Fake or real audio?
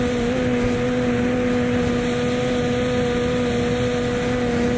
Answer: real